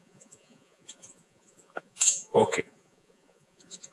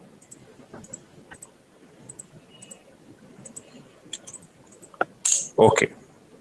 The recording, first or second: second